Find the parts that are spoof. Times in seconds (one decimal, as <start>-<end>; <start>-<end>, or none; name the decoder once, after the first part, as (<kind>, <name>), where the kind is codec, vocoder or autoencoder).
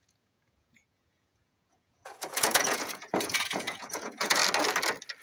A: 0.0-4.4 (vocoder, Vocos)